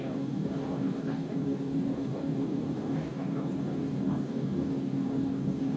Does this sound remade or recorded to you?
remade